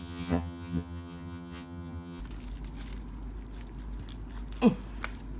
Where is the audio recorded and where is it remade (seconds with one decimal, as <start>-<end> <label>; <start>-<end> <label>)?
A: 0.0-2.2 remade; 2.2-5.4 recorded